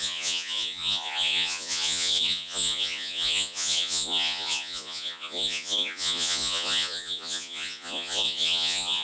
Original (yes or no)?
no